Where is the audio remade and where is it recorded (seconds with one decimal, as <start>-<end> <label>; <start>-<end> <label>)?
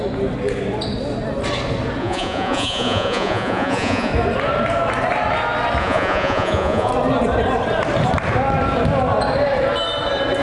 0.0-2.0 recorded; 2.0-4.1 remade; 4.1-5.8 recorded; 5.8-6.9 remade; 6.9-10.4 recorded